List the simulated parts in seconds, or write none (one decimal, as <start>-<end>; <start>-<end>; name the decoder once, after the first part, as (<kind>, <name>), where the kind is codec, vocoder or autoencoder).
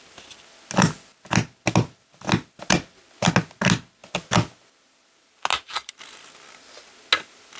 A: none